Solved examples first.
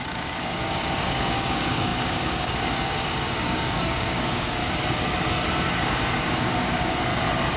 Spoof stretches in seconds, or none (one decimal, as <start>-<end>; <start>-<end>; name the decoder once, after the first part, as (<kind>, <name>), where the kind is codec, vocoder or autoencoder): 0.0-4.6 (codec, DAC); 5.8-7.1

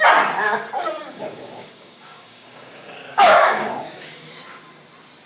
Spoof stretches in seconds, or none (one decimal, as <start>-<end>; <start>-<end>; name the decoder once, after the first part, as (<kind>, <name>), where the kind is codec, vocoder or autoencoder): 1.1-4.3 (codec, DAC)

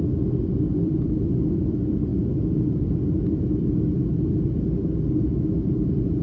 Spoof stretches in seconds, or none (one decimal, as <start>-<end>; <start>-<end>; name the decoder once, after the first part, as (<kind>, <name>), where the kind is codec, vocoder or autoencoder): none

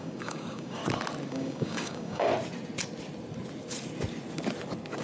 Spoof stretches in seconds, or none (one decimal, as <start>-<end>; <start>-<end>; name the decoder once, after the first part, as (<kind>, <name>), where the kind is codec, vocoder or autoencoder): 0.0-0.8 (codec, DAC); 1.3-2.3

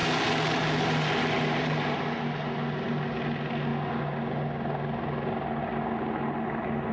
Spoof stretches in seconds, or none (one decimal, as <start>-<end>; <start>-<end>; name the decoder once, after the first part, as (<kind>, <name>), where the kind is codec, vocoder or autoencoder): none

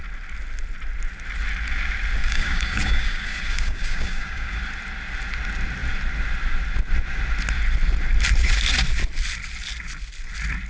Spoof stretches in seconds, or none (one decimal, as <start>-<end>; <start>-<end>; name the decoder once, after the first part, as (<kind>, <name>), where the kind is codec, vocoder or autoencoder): 2.2-4.6 (codec, DAC)